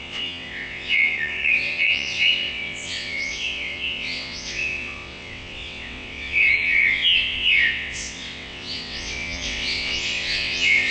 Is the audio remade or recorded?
remade